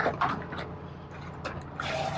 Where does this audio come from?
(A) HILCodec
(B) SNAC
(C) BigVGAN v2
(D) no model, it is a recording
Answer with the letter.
D